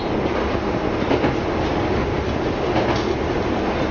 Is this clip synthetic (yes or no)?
no